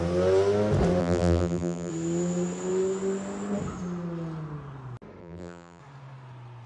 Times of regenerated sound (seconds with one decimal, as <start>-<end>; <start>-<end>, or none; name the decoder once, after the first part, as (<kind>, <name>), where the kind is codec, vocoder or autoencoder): 1.0-1.9 (vocoder, BigVGAN v2); 5.2-5.8